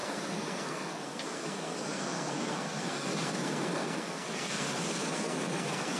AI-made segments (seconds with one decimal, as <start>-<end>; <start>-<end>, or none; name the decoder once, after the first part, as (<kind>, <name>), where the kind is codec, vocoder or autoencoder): 0.0-6.0 (codec, SNAC)